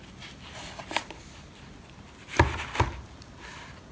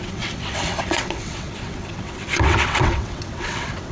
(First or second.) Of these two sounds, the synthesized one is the second